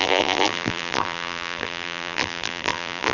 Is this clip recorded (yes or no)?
no